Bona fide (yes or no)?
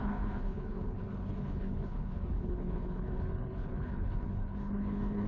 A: no